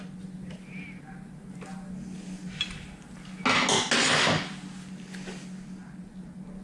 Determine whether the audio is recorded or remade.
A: recorded